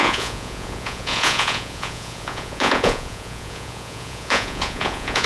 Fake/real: fake